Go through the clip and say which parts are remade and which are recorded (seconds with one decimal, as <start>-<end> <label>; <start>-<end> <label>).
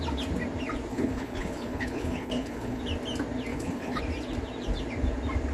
0.0-0.9 recorded; 0.9-2.8 remade; 2.8-3.5 recorded; 3.5-4.0 remade; 4.0-5.5 recorded